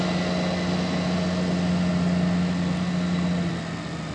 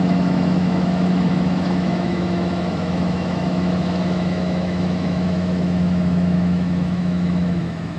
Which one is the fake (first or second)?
second